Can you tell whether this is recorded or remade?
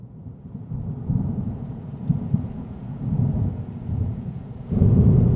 remade